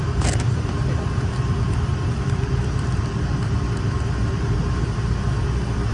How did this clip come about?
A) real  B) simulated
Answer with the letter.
B